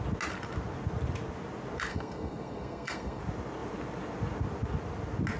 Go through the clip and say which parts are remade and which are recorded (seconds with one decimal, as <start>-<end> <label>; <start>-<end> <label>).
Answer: 0.0-1.9 recorded; 1.9-3.2 remade; 3.2-5.4 recorded